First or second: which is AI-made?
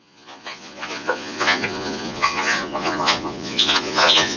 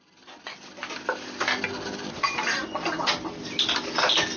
first